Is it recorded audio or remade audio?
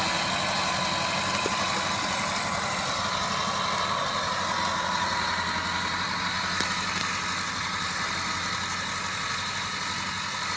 recorded